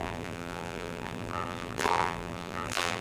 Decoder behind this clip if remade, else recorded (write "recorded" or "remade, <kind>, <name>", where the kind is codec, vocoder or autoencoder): remade, vocoder, BigVGAN v2